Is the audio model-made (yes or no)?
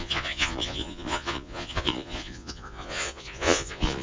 yes